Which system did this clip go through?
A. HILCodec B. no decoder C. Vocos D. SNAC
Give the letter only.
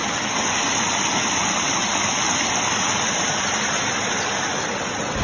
B